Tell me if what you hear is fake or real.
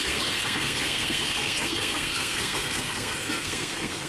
fake